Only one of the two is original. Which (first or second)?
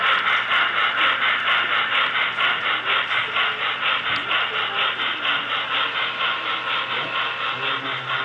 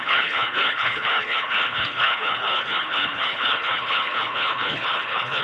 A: first